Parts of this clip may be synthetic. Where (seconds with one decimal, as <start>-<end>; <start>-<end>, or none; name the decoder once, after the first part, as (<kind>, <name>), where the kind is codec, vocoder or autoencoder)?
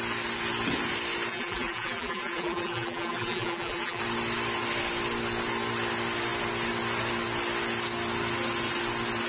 1.3-4.0 (vocoder, BigVGAN v2)